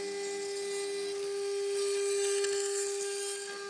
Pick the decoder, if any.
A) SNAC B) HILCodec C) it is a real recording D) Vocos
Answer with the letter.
C